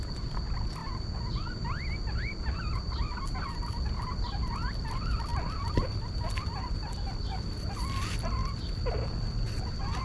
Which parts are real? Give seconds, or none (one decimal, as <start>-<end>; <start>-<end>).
0.0-0.8; 3.0-5.3; 5.9-10.0